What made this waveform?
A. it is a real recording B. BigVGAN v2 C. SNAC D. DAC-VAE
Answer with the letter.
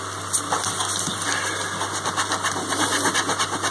A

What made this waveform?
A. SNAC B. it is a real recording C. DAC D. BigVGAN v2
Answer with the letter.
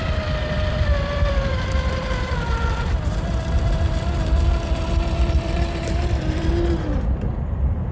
D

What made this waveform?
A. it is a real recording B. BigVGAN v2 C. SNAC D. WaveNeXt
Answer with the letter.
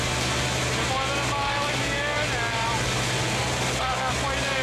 A